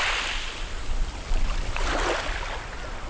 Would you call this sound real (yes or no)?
yes